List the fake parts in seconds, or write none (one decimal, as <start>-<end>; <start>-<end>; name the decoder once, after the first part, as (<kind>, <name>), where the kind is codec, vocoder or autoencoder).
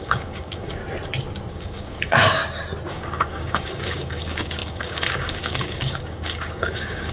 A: 0.0-0.8 (codec, DAC); 1.5-2.4; 2.9-7.1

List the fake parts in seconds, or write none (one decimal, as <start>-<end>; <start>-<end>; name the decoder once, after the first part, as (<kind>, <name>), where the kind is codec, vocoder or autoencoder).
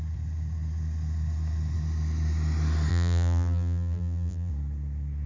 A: 2.9-4.5 (vocoder, BigVGAN v2)